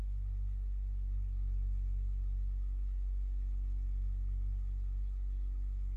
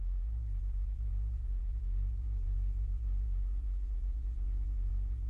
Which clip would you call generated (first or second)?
second